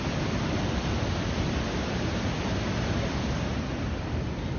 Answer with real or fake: real